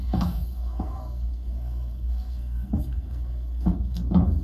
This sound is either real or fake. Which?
fake